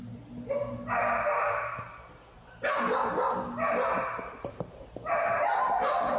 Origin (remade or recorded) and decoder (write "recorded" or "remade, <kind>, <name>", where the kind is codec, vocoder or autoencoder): remade, vocoder, BigVGAN v2